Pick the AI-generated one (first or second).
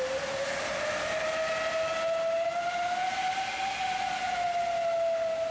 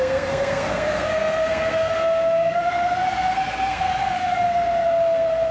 second